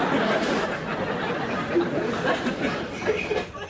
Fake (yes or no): no